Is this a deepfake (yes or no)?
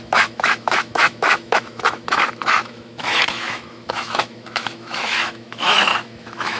yes